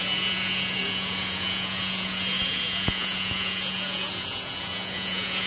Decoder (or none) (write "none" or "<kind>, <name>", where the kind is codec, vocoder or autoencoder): vocoder, Vocos